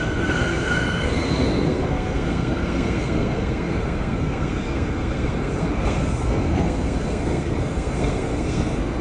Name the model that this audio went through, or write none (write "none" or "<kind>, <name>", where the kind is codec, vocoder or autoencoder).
codec, SNAC